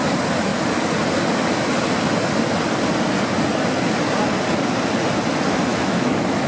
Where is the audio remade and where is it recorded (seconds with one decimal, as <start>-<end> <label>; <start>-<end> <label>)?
0.0-5.7 recorded; 5.7-6.5 remade